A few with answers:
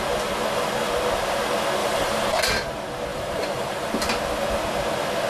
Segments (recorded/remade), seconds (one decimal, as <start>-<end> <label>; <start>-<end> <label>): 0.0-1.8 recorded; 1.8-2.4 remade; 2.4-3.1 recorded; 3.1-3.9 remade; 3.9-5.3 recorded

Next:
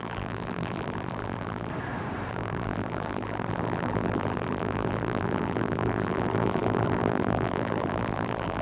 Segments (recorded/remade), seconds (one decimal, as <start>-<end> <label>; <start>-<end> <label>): 0.0-1.7 remade; 1.7-2.3 recorded; 2.3-8.6 remade

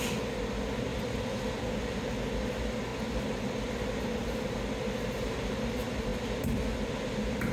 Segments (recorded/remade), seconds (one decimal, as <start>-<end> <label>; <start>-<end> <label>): 0.0-0.9 recorded; 0.9-1.6 remade; 1.6-7.5 recorded

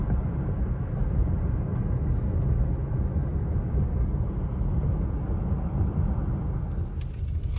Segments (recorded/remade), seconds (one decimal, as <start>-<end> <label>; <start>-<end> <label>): 0.0-7.6 recorded

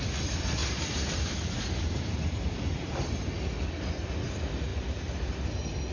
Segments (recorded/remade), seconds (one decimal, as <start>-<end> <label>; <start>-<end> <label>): 0.0-0.6 recorded; 0.6-3.3 remade; 3.3-4.7 recorded; 4.7-5.3 remade; 5.3-5.9 recorded

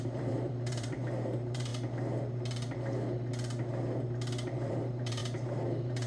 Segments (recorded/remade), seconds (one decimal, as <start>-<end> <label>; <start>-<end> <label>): 0.0-1.7 remade; 1.7-4.7 recorded; 4.7-6.1 remade